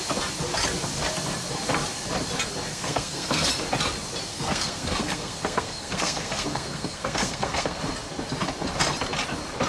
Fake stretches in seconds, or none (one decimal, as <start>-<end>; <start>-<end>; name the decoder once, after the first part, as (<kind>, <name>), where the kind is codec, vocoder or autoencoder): 2.7-3.5 (codec, SNAC); 4.3-7.8

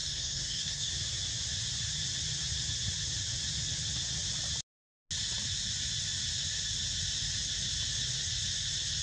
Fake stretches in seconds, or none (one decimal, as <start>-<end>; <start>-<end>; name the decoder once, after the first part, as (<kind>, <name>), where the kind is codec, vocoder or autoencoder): 0.0-0.9 (codec, SNAC)

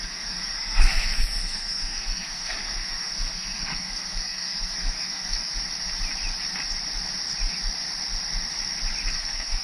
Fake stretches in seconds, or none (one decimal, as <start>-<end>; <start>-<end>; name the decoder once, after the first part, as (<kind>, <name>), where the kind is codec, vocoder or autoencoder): 0.0-5.5 (codec, SNAC); 9.2-9.6

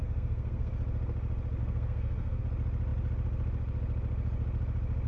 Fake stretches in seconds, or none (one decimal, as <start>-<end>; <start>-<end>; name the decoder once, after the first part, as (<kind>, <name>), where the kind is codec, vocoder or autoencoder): 0.0-0.7 (codec, SNAC); 1.6-2.4

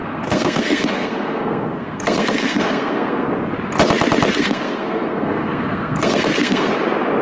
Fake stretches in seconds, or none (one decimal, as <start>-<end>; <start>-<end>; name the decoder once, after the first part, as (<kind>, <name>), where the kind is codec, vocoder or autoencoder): 0.0-3.3 (codec, SNAC); 4.3-6.7

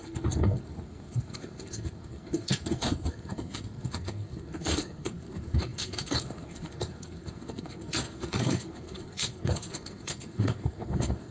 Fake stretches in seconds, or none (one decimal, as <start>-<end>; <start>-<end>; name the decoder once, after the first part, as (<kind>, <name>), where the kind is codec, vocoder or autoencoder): 0.0-11.3 (codec, SNAC)

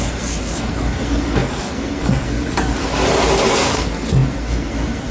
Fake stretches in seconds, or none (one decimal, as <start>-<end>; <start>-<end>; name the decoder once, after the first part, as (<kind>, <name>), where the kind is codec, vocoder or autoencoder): 0.0-2.9 (codec, SNAC); 3.5-5.1